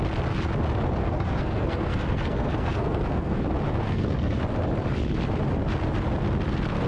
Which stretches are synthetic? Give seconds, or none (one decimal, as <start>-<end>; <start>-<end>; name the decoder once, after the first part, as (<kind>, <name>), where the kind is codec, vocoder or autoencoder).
1.0-3.4 (codec, SNAC); 3.8-4.4

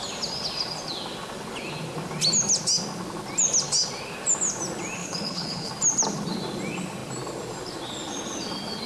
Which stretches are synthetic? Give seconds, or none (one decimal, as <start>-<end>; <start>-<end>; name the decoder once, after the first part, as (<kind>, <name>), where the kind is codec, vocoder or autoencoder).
5.0-5.7 (codec, HILCodec)

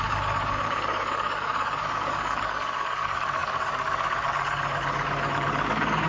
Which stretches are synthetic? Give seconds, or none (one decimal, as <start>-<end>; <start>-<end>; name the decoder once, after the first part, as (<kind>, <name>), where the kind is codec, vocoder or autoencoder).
0.0-6.1 (codec, DAC)

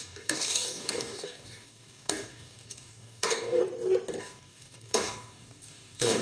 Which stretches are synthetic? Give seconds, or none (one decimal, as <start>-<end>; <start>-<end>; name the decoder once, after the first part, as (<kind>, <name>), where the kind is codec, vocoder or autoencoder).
0.0-3.6 (codec, DAC); 4.2-6.2

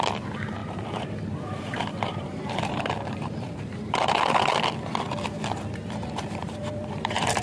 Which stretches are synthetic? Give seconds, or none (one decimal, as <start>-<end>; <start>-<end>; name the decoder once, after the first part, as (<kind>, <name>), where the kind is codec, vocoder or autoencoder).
0.6-4.2 (vocoder, BigVGAN v2); 6.4-7.4

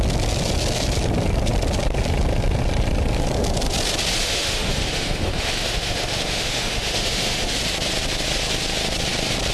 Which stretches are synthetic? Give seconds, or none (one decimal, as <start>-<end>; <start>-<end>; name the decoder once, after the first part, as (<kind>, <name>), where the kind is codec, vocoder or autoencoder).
4.2-7.6 (autoencoder, DAC-VAE)

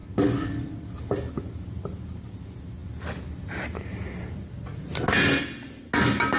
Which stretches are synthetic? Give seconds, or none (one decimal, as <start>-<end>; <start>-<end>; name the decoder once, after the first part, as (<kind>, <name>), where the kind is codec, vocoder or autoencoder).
none

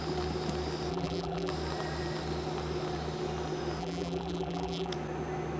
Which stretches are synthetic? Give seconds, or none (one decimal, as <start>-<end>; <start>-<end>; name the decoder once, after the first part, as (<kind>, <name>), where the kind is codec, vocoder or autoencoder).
0.9-1.5 (vocoder, BigVGAN v2); 3.8-4.9